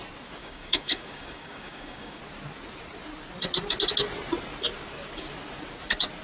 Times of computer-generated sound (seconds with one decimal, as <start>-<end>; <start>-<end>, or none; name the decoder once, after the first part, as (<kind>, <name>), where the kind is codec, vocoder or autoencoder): 0.4-2.2 (codec, DAC)